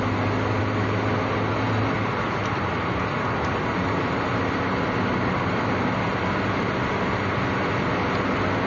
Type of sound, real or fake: real